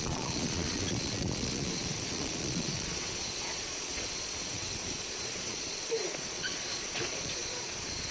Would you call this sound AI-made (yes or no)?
yes